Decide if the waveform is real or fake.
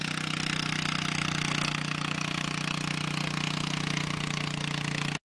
real